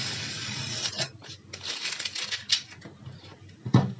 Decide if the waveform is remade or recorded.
recorded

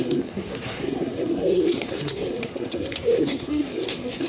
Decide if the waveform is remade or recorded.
remade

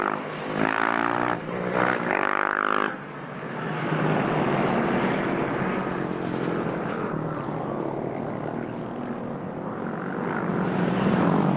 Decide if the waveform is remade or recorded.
recorded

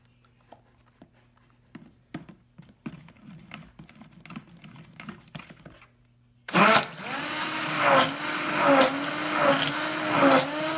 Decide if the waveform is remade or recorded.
recorded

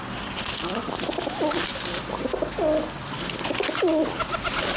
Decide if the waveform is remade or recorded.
recorded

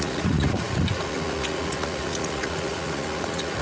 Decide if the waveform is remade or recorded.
remade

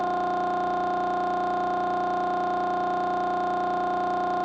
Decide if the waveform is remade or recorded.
recorded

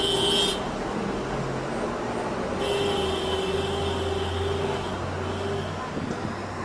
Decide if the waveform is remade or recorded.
recorded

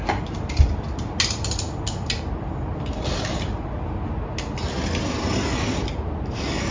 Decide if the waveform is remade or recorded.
recorded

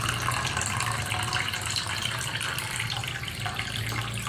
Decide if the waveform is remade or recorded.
recorded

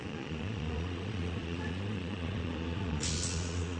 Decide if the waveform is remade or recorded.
remade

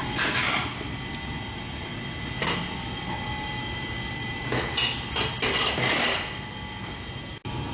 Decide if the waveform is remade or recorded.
recorded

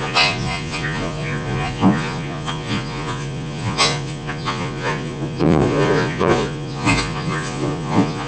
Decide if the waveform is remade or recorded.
remade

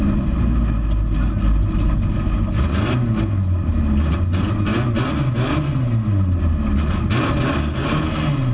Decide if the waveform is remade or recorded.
recorded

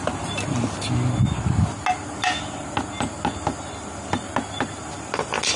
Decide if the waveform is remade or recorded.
recorded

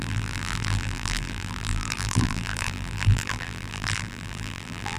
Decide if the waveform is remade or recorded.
remade